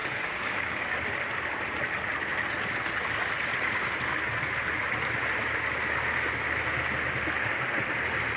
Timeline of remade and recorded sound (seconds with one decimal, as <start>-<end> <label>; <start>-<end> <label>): 0.0-1.3 remade; 1.3-8.4 recorded